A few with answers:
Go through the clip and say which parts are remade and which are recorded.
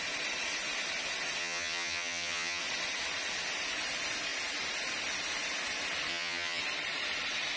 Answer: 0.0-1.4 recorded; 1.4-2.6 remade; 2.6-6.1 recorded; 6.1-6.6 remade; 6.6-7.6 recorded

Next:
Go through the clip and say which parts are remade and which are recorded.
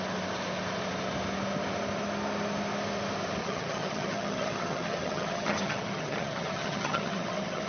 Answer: 0.0-3.4 recorded; 3.4-7.7 remade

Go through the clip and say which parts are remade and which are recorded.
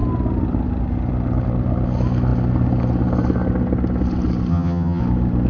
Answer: 0.0-4.5 recorded; 4.5-5.0 remade; 5.0-5.5 recorded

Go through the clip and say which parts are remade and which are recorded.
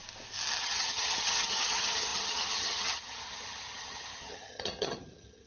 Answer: 0.0-0.6 recorded; 0.6-5.5 remade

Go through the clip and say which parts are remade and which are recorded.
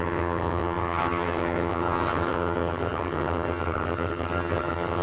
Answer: 0.0-5.0 remade